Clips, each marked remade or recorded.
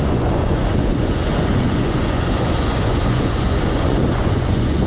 remade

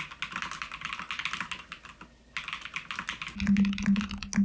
recorded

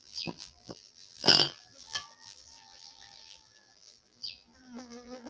remade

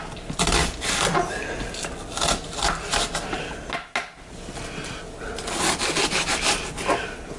recorded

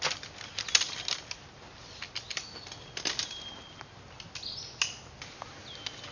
recorded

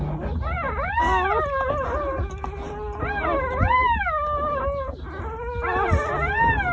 recorded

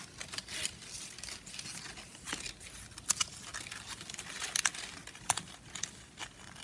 recorded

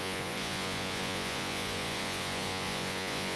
remade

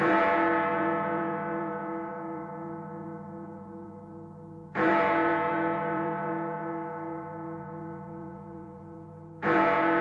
remade